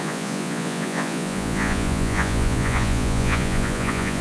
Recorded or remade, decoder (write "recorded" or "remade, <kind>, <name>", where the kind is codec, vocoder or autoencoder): remade, vocoder, Vocos